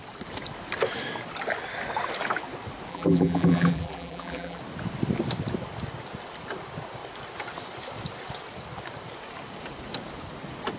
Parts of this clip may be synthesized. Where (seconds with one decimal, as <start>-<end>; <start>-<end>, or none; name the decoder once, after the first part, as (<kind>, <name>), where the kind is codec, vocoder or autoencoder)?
2.9-4.6 (vocoder, BigVGAN v2)